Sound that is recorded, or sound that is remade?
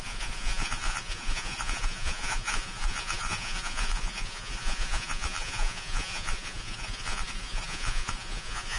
remade